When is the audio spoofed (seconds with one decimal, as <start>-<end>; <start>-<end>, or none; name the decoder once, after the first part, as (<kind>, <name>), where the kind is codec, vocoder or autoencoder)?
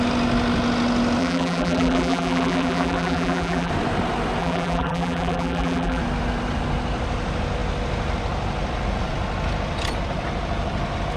1.2-3.7 (vocoder, BigVGAN v2); 4.4-6.0